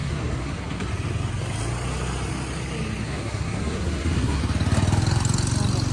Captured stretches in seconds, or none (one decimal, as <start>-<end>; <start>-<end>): 0.9-3.0; 4.4-5.9